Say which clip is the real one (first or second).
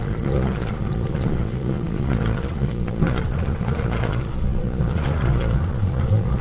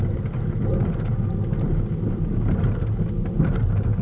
second